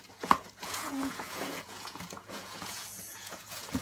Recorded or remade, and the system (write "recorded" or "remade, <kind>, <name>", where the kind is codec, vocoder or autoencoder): remade, vocoder, Vocos